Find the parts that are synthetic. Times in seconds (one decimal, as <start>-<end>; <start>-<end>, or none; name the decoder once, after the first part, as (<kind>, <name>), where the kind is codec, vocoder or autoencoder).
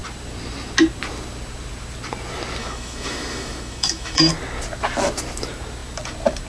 2.6-4.3 (autoencoder, DAC-VAE)